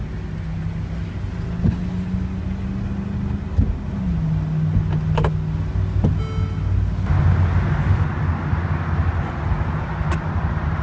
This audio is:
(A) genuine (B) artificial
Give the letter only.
A